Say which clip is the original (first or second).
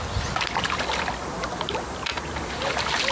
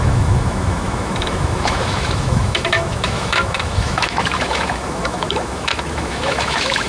first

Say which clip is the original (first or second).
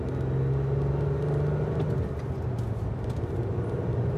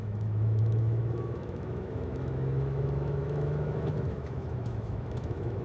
first